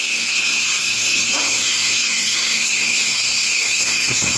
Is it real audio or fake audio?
fake